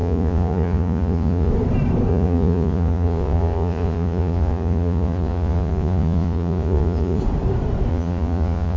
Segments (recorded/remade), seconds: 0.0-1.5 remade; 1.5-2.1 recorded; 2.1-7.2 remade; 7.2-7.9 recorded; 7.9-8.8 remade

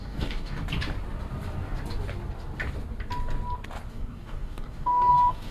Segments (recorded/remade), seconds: 0.0-0.6 remade; 0.6-3.9 recorded; 3.9-5.5 remade

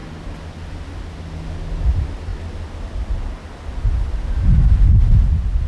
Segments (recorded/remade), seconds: 0.0-5.7 recorded

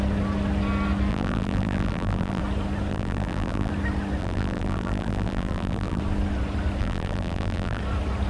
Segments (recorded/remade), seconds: 0.0-1.1 recorded; 1.1-2.4 remade; 2.4-2.9 recorded; 2.9-3.7 remade; 3.7-4.2 recorded; 4.2-6.0 remade; 6.0-6.8 recorded; 6.8-7.8 remade; 7.8-8.3 recorded

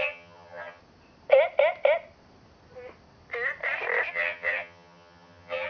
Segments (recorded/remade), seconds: 0.0-0.8 remade; 0.8-4.1 recorded; 4.1-5.7 remade

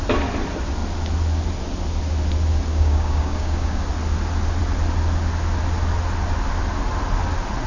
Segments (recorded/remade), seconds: 0.0-2.7 recorded; 2.7-3.8 remade; 3.8-7.7 recorded

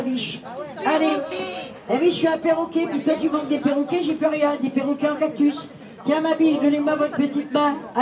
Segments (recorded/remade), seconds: 0.0-1.1 recorded; 1.1-1.9 remade; 1.9-8.0 recorded